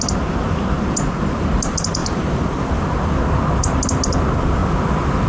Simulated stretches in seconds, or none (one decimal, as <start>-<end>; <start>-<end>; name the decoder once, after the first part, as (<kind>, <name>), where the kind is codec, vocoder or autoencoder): 2.0-2.9 (vocoder, BigVGAN v2)